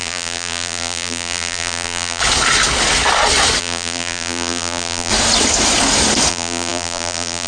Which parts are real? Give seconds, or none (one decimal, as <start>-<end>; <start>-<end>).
2.2-3.6; 5.1-6.3